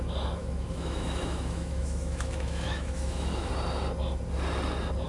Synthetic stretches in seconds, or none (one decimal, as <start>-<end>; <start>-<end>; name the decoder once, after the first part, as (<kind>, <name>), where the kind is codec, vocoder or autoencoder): 0.4-3.5 (autoencoder, DAC-VAE)